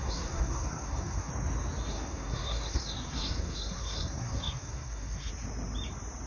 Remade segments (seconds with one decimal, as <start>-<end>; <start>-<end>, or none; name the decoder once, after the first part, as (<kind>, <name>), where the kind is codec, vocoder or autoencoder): 0.0-1.3 (codec, SNAC); 1.9-5.3